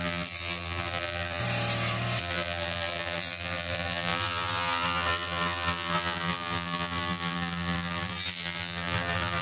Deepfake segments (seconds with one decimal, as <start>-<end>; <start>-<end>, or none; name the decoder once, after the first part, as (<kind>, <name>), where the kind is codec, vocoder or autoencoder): 0.0-1.4 (vocoder, BigVGAN v2); 2.2-9.4